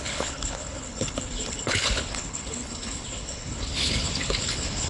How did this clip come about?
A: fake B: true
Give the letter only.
A